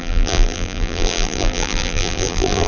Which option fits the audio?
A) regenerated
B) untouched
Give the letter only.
A